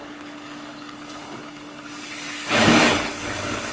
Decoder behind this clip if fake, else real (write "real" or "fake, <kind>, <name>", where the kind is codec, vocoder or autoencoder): fake, codec, DAC